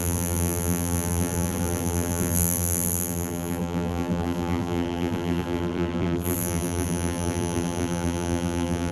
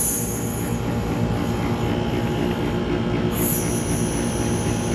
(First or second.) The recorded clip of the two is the second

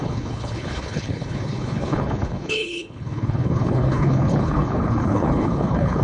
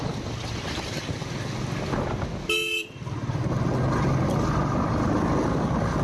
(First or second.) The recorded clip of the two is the second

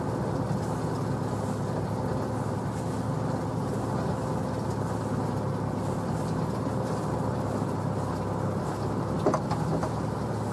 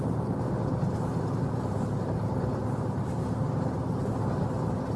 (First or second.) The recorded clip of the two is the first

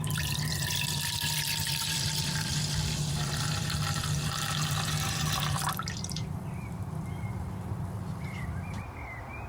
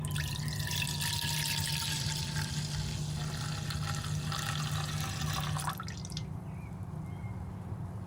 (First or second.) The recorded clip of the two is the second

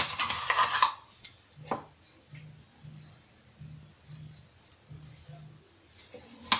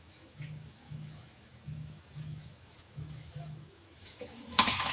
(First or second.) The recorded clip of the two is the first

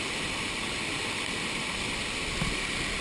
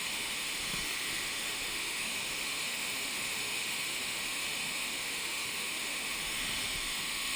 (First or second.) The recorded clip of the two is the first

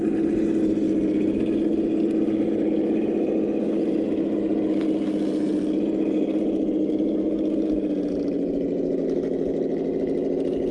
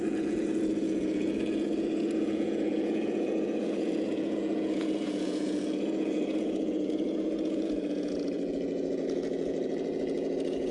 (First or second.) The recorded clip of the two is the first